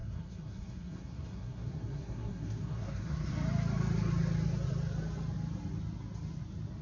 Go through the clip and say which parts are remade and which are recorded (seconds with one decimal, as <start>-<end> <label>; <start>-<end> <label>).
0.0-3.3 remade; 3.3-6.8 recorded